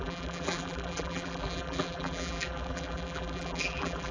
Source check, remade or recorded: remade